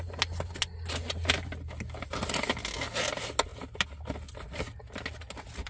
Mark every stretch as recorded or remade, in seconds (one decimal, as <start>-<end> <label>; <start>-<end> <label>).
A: 0.0-5.7 recorded